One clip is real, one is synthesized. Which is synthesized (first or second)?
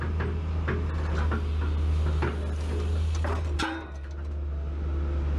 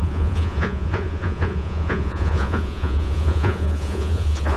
second